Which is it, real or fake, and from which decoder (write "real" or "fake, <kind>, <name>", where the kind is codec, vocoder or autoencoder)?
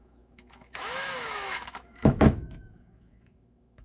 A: fake, autoencoder, DAC-VAE